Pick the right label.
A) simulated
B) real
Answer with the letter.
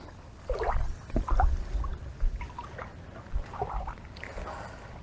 B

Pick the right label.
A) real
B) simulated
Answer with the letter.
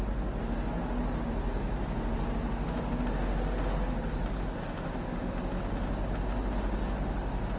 A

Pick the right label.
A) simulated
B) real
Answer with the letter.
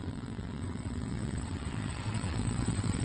A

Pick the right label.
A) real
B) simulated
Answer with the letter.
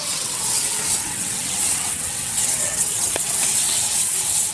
B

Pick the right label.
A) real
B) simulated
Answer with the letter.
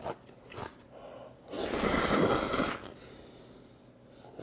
A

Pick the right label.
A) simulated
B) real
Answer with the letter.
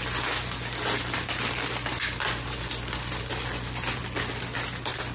B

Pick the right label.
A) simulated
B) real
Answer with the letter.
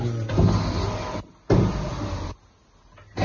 B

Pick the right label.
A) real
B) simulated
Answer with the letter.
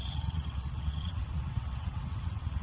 B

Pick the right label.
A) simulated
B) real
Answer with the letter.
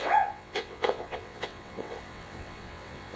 A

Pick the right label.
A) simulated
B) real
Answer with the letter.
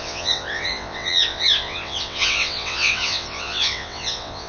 A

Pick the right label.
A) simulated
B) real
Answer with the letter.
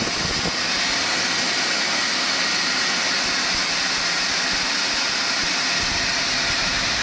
B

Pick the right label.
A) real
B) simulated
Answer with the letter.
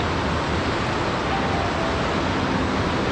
A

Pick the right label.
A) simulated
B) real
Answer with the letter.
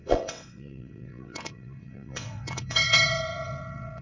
A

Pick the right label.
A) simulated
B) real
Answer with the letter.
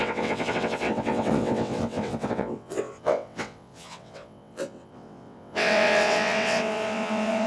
A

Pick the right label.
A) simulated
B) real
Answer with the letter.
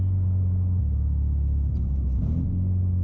B